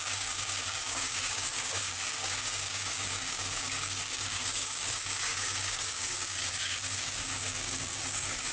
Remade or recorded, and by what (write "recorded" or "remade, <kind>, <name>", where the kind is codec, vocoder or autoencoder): remade, codec, DAC